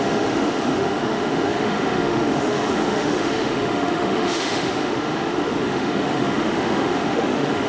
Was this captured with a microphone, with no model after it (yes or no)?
no